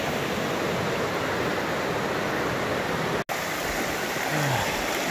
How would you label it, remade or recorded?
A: recorded